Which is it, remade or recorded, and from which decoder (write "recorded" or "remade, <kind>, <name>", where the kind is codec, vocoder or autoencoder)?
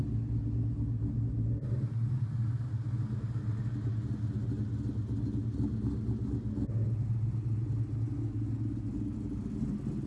recorded